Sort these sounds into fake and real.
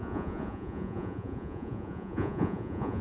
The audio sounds fake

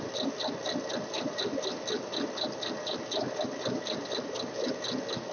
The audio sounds real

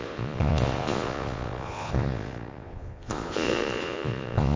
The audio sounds fake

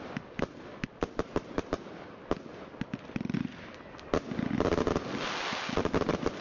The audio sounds real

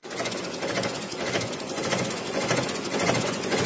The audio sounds fake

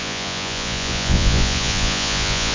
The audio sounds fake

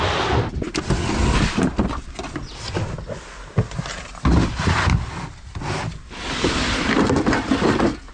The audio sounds real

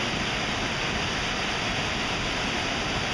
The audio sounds real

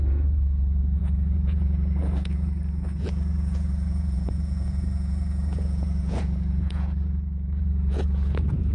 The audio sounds fake